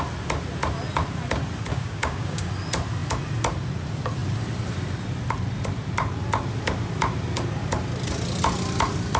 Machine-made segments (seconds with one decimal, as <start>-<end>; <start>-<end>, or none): 1.7-2.5